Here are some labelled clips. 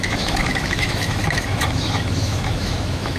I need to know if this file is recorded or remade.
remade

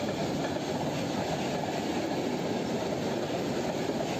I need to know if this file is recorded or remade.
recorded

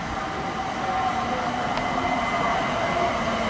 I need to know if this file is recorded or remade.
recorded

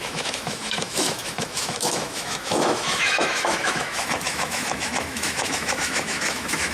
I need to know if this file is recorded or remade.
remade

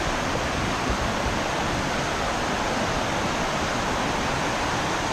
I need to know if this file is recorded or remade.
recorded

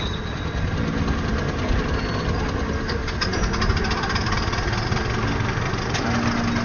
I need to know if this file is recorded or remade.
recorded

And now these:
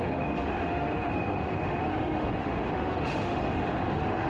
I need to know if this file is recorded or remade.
remade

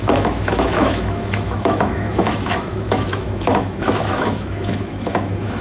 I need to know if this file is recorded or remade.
remade